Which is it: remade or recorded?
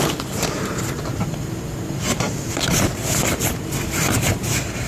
remade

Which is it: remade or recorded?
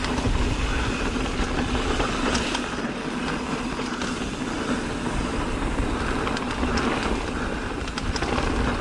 recorded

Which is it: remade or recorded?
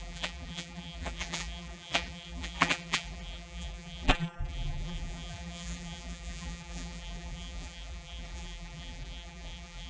remade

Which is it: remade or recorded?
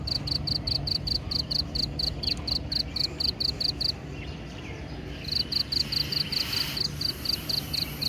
remade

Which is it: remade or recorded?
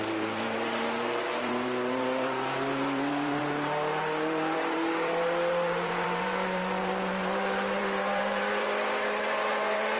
remade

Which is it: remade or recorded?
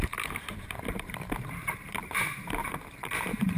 remade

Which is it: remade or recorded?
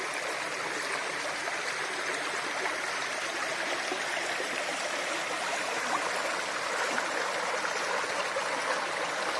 recorded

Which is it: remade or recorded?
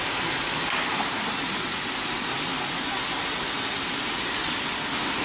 recorded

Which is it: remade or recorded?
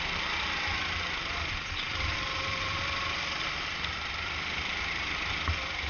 remade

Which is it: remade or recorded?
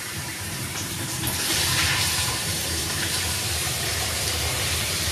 remade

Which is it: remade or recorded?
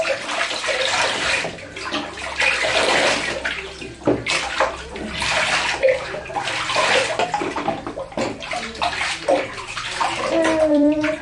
remade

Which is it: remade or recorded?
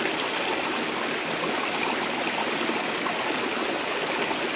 recorded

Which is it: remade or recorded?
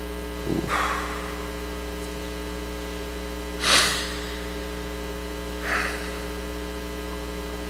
remade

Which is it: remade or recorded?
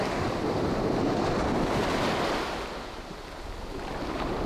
recorded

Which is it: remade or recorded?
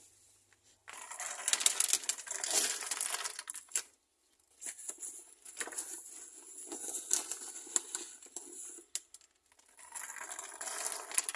recorded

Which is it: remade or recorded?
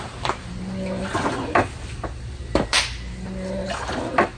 recorded